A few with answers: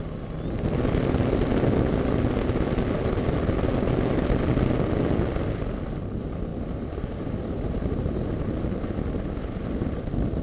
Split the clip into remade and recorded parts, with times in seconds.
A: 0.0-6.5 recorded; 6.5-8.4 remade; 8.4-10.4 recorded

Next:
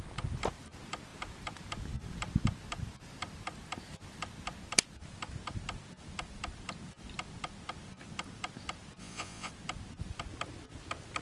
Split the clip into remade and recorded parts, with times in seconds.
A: 0.0-9.0 recorded; 9.0-9.5 remade; 9.5-11.2 recorded

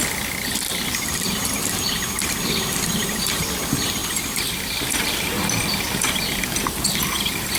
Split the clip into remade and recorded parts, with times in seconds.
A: 0.0-7.6 recorded

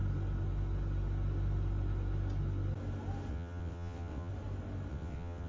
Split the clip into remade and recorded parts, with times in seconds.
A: 0.0-3.3 recorded; 3.3-4.3 remade; 4.3-4.9 recorded; 4.9-5.5 remade